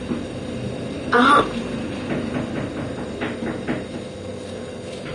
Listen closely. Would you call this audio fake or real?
real